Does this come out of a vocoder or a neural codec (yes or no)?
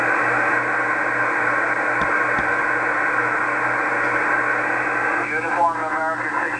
no